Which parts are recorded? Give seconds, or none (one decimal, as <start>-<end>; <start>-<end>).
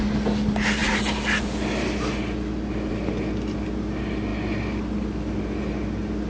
0.0-6.3